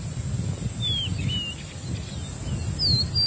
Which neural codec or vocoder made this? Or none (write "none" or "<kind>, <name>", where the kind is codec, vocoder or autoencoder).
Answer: none